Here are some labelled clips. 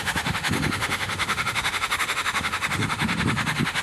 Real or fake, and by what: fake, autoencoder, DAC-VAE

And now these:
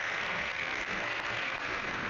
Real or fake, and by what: fake, codec, SNAC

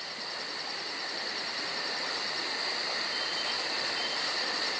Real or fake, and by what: real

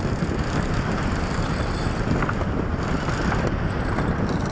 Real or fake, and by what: real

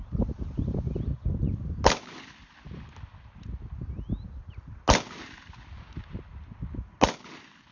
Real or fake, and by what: real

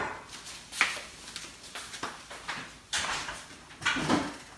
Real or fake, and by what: real